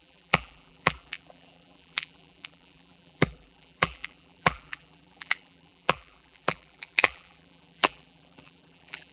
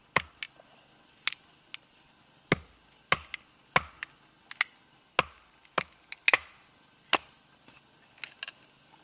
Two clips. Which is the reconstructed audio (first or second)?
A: first